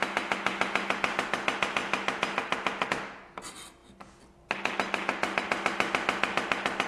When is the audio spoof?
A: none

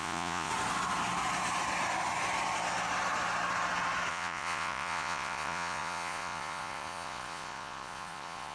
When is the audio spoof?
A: 0.0-0.5 (vocoder, Vocos); 4.1-8.5

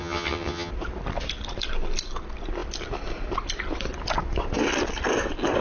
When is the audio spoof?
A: 0.0-0.7 (vocoder, HiFi-GAN)

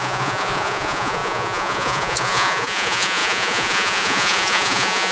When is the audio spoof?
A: 0.0-5.1 (vocoder, Vocos)

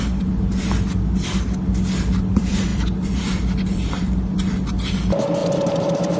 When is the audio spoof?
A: 2.7-4.5 (vocoder, BigVGAN v2); 5.4-6.2